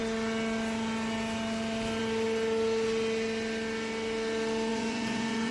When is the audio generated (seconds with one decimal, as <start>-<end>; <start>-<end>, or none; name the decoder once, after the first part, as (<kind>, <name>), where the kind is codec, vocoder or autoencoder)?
4.7-5.5 (vocoder, Vocos)